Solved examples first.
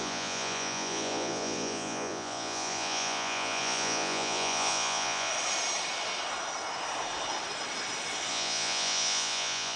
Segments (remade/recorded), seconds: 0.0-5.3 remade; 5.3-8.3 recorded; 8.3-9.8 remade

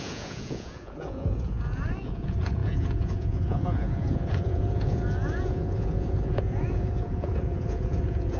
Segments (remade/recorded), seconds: 0.0-8.4 remade

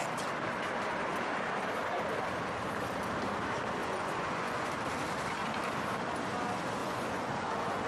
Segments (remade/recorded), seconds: 0.0-3.8 recorded; 3.8-4.7 remade; 4.7-6.8 recorded; 6.8-7.9 remade

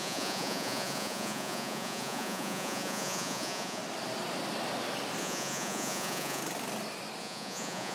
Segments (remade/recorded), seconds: 0.0-3.8 remade; 3.8-5.2 recorded; 5.2-6.4 remade; 6.4-7.2 recorded; 7.2-7.9 remade

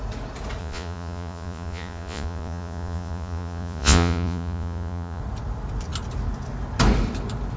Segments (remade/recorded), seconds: 0.0-0.6 recorded; 0.6-5.2 remade; 5.2-7.6 recorded

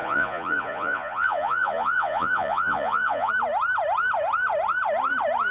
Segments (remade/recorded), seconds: 0.0-3.3 remade; 3.3-5.5 recorded

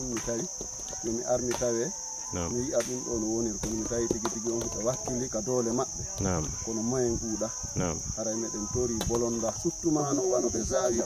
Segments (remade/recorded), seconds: 0.0-10.0 recorded; 10.0-11.0 remade

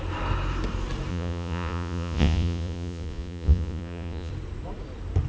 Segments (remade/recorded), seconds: 0.0-1.1 recorded; 1.1-4.3 remade; 4.3-5.3 recorded